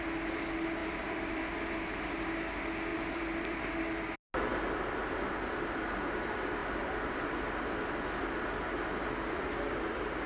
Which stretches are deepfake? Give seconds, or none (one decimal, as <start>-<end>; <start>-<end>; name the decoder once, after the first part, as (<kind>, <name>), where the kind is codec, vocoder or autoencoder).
0.8-1.7 (vocoder, BigVGAN v2); 2.9-3.6; 6.6-7.4